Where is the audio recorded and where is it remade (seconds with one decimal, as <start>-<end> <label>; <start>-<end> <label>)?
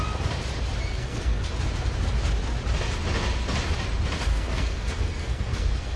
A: 0.0-0.9 recorded; 0.9-1.5 remade; 1.5-4.3 recorded; 4.3-6.0 remade